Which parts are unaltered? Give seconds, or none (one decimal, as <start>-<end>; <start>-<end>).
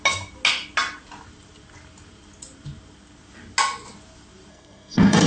0.0-4.5